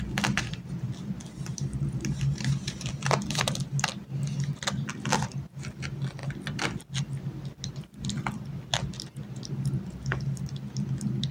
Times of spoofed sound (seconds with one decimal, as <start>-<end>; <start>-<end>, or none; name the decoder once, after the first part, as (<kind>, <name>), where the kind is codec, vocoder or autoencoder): 1.5-2.9 (vocoder, BigVGAN v2)